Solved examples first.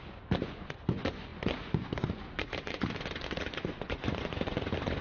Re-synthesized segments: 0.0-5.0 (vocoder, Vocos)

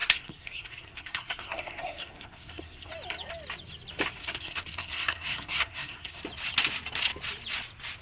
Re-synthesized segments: 0.0-2.9 (codec, SNAC); 4.2-6.2

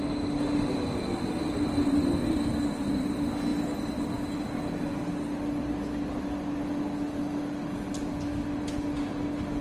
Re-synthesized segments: none

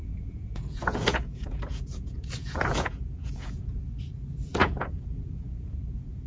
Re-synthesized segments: 0.0-3.8 (vocoder, Vocos); 4.6-6.3

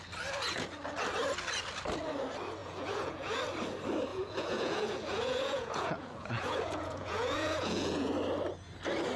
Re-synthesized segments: 2.6-3.4 (vocoder, Vocos); 4.1-8.1

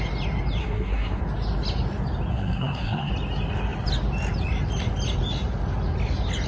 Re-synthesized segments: 0.6-1.2 (codec, SNAC); 2.3-3.1

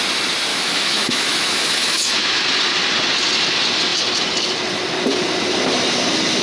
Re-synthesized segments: 0.5-2.4 (autoencoder, DAC-VAE)